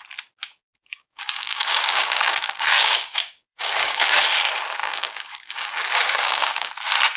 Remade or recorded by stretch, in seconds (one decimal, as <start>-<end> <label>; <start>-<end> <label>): 0.0-0.5 recorded; 0.5-4.2 remade; 4.2-4.8 recorded; 4.8-6.7 remade; 6.7-7.2 recorded